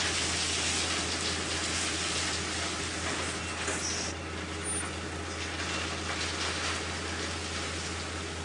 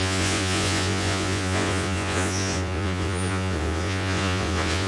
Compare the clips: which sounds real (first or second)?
first